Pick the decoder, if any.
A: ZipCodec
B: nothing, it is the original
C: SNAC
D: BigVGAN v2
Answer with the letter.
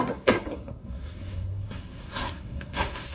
C